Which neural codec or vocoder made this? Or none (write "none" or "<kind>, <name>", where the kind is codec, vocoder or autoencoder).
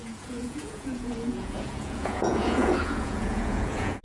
vocoder, Vocos